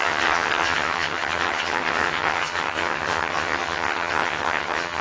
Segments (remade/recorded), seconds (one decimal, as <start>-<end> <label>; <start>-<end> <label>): 0.0-5.0 remade